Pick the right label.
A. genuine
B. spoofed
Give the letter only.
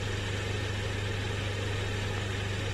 A